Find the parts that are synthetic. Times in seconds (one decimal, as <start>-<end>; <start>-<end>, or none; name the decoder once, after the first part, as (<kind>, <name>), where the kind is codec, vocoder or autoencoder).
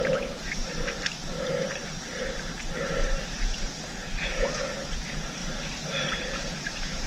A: 0.0-0.6 (vocoder, Vocos); 3.3-5.4; 6.1-7.1